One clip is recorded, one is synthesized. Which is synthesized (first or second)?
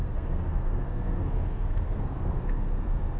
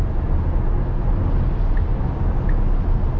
first